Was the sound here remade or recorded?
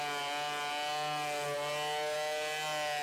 recorded